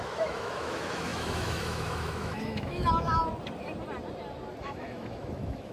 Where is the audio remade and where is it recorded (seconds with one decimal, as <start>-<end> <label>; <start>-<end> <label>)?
0.0-3.2 remade; 3.2-4.6 recorded; 4.6-5.7 remade